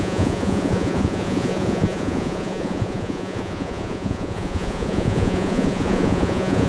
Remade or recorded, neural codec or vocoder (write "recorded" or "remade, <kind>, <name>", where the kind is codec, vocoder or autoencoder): remade, vocoder, Vocos